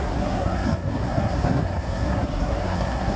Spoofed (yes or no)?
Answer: yes